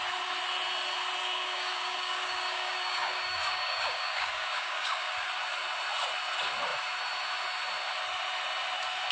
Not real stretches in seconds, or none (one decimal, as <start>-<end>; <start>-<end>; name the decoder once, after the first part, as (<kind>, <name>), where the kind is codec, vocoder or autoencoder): 1.2-5.3 (codec, DAC)